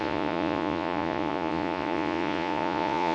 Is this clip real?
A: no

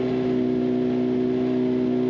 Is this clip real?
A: yes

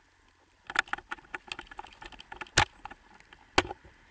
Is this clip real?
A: yes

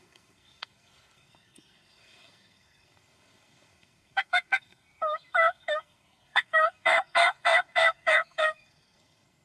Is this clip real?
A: no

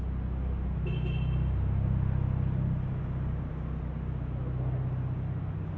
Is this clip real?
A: yes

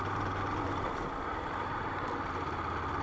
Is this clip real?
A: yes